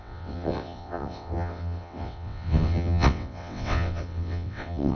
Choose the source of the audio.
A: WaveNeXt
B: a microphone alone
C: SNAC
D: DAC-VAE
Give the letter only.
A